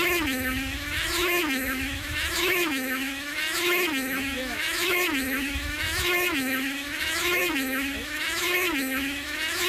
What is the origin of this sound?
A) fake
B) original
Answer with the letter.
A